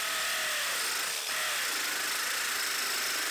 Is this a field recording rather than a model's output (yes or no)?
yes